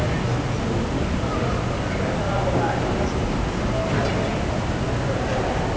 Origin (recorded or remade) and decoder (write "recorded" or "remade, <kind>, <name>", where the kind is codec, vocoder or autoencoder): recorded